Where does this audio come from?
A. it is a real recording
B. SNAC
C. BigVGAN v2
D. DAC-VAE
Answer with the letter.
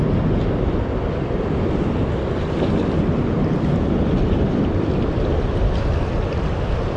A